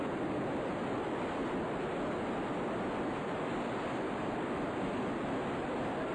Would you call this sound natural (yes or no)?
yes